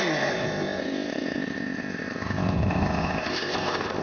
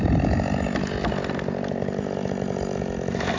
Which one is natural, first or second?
second